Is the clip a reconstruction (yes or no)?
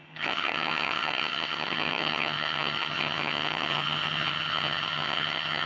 yes